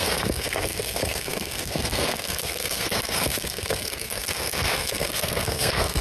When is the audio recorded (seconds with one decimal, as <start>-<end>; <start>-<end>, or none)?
none